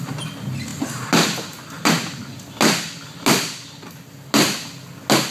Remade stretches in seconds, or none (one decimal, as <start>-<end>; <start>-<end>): none